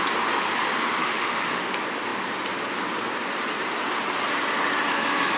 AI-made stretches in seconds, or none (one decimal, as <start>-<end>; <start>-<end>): 1.0-1.7

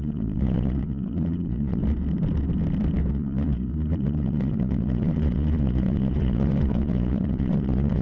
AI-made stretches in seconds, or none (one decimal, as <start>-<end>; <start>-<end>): 0.0-1.8; 3.1-8.0